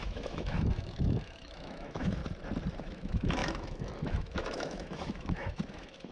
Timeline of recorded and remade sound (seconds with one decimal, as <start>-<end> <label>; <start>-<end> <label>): 0.0-2.2 remade; 2.2-2.8 recorded; 2.8-6.1 remade